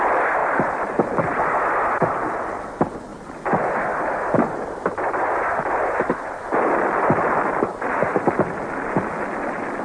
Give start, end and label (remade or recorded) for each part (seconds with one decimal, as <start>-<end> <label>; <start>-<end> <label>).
0.0-0.4 recorded; 0.4-1.6 remade; 1.6-3.1 recorded; 3.1-8.3 remade; 8.3-9.8 recorded